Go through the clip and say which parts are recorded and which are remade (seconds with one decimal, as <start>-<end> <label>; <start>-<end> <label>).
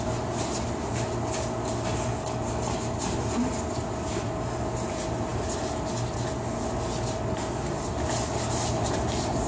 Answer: 0.0-9.5 recorded